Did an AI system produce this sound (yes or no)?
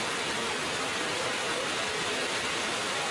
no